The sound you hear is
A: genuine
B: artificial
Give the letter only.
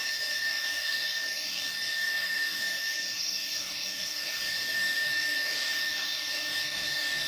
B